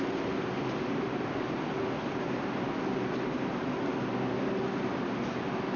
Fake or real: real